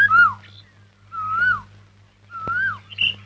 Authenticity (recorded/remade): recorded